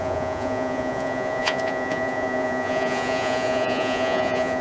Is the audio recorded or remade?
remade